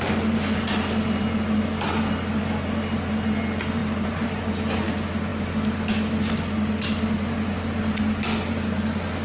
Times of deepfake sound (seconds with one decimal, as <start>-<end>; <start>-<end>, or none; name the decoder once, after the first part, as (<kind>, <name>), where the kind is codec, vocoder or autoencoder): 3.8-4.4 (vocoder, BigVGAN v2)